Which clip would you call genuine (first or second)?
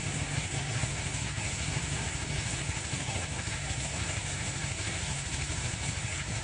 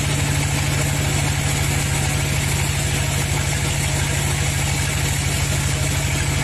second